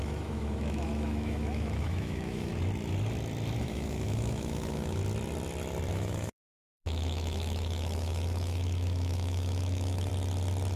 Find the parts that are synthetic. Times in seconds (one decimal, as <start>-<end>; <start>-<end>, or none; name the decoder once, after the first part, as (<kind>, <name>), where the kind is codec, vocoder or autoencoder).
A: 0.0-2.5 (autoencoder, DAC-VAE); 3.6-5.0; 5.9-10.1